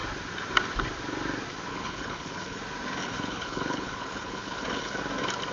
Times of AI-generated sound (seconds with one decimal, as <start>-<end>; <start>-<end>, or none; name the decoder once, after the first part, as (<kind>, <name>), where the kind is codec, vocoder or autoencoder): 1.7-2.6 (codec, HILCodec); 3.0-5.0